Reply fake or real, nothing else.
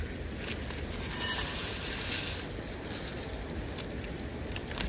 real